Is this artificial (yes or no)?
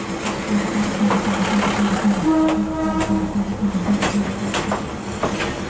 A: no